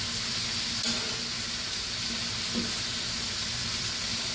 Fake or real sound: real